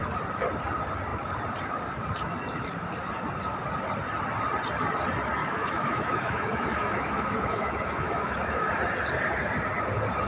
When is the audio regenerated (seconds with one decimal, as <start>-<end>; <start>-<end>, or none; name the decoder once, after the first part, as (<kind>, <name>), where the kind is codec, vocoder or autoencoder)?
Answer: 5.4-8.7 (autoencoder, DAC-VAE)